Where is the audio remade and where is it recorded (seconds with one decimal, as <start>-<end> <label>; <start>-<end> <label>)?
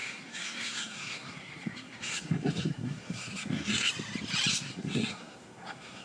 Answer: 0.0-3.9 remade; 3.9-4.5 recorded; 4.5-6.0 remade